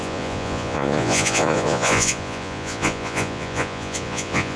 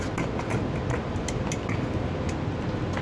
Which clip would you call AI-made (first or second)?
first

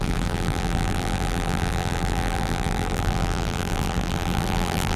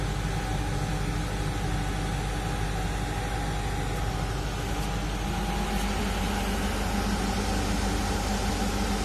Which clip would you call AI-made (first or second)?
first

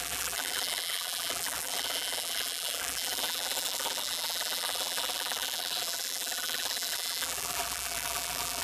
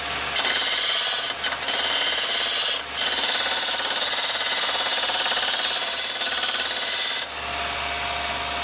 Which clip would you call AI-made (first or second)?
first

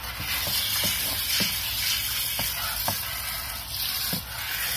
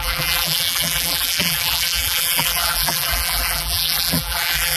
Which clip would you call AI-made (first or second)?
second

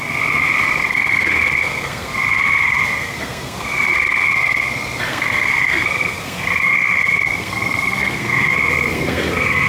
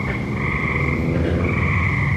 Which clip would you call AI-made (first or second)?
first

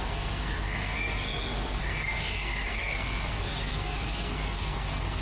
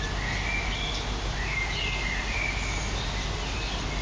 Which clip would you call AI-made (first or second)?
first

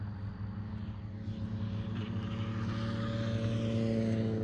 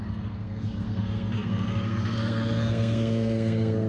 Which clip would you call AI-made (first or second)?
second